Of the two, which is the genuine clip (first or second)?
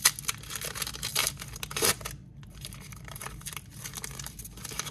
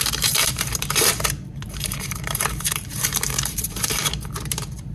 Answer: first